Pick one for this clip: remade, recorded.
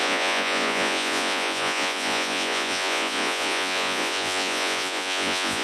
remade